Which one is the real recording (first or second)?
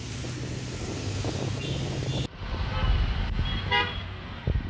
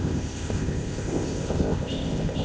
first